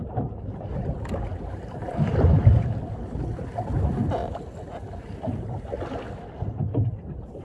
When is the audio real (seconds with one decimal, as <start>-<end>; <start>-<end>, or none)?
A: 0.0-1.3; 2.9-4.2; 4.9-7.4